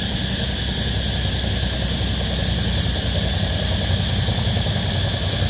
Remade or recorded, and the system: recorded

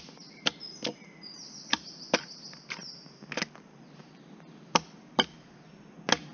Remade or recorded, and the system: recorded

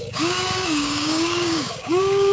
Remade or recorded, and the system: remade, codec, DAC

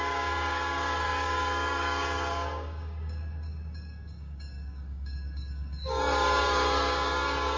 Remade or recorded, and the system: remade, codec, DAC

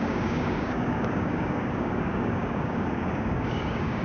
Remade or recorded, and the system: remade, codec, DAC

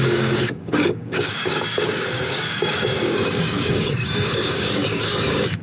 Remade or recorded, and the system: remade, codec, DAC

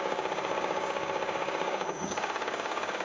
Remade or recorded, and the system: remade, codec, DAC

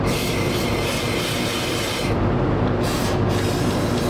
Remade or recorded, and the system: recorded